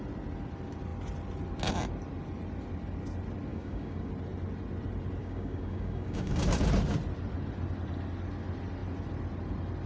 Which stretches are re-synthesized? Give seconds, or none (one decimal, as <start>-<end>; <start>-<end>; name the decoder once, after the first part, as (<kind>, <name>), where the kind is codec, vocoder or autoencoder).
3.5-4.1 (codec, DAC); 5.2-6.4